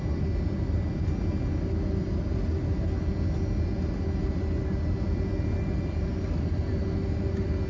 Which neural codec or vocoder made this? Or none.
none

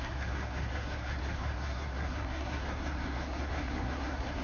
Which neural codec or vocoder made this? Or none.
codec, SNAC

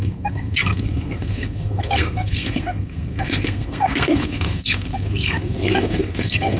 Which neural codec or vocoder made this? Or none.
codec, SNAC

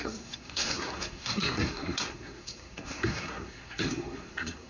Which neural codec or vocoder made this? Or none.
codec, SNAC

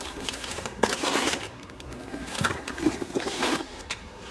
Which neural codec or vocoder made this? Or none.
codec, SNAC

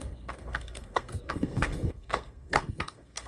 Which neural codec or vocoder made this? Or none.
codec, SNAC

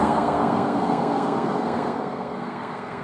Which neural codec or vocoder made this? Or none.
codec, SNAC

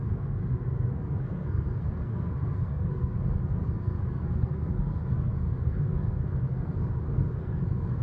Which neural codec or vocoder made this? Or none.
codec, SNAC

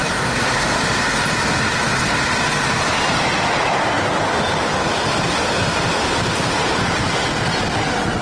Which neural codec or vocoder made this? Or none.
none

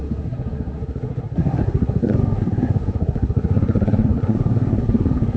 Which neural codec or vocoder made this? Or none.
codec, SNAC